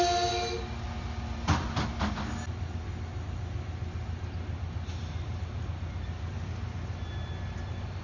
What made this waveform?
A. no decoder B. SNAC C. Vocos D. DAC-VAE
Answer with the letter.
A